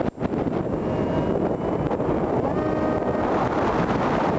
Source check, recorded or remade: recorded